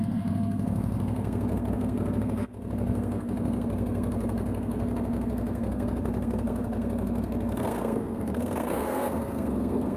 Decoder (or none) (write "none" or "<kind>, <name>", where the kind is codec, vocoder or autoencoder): codec, SNAC